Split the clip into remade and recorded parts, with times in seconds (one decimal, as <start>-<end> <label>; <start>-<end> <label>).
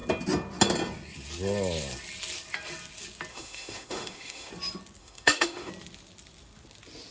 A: 0.0-3.3 recorded; 3.3-4.5 remade; 4.5-5.0 recorded; 5.0-5.7 remade; 5.7-7.1 recorded